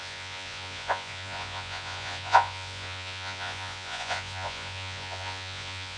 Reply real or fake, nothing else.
fake